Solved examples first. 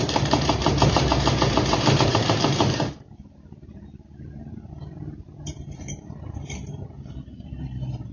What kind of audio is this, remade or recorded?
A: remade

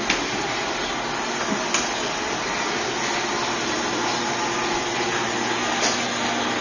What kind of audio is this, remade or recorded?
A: recorded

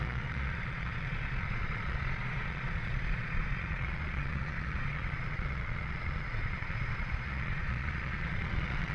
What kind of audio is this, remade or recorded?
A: remade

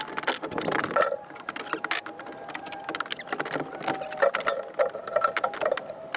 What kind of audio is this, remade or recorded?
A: recorded